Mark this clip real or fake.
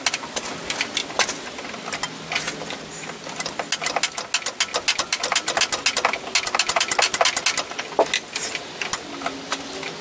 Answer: real